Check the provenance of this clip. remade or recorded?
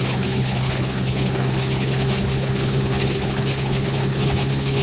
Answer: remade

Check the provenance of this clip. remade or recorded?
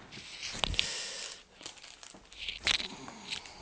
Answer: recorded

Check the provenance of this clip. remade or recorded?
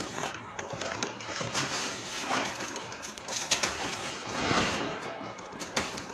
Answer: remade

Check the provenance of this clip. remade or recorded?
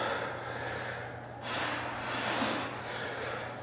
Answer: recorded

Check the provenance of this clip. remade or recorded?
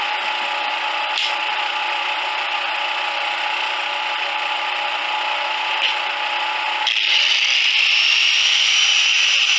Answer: remade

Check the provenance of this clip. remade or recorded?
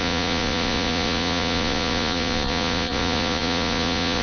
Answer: remade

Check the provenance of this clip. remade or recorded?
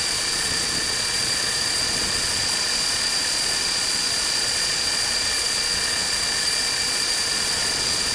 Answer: remade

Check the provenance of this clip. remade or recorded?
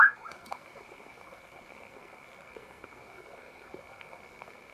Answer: remade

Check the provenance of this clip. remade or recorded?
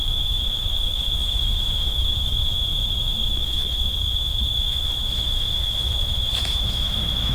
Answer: remade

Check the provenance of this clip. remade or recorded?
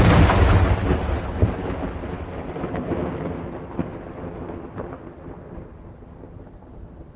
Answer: recorded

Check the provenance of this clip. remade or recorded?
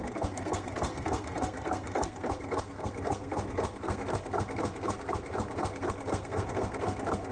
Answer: remade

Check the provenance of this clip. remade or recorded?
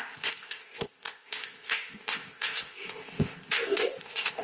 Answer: remade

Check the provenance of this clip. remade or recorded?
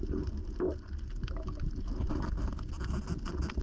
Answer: recorded